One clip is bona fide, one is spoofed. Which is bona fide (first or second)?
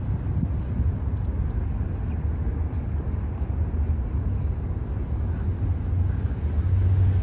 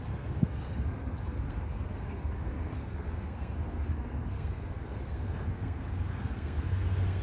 first